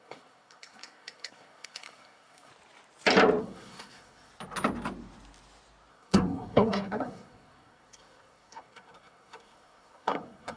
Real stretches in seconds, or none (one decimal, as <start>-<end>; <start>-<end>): 2.5-3.4; 4.3-5.9